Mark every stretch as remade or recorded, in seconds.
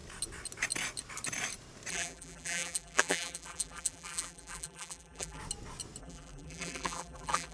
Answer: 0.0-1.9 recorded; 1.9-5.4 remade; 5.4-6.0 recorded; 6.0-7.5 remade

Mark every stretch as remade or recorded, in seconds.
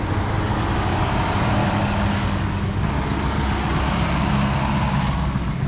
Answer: 0.0-1.6 recorded; 1.6-3.7 remade; 3.7-5.7 recorded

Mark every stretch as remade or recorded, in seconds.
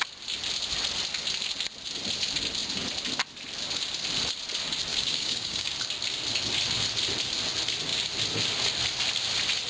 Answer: 0.0-4.9 recorded; 4.9-5.7 remade; 5.7-9.7 recorded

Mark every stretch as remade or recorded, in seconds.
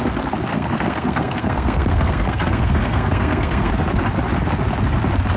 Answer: 0.0-0.5 recorded; 0.5-3.7 remade; 3.7-5.4 recorded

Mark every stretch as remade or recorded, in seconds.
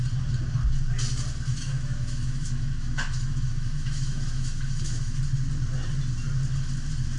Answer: 0.0-1.5 recorded; 1.5-5.2 remade; 5.2-7.2 recorded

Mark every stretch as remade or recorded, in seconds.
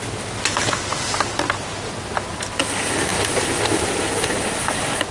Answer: 0.0-5.1 recorded